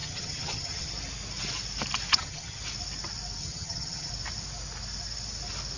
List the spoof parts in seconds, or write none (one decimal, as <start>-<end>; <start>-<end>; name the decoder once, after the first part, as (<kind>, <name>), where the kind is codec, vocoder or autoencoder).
0.0-0.9 (vocoder, HiFi-GAN); 2.1-2.6; 3.4-4.1